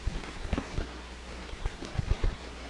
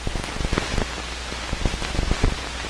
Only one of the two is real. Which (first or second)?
second